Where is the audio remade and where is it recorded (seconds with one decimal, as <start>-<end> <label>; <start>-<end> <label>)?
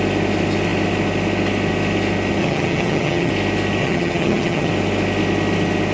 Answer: 0.0-2.4 recorded; 2.4-3.3 remade; 3.3-3.8 recorded; 3.8-4.7 remade; 4.7-5.9 recorded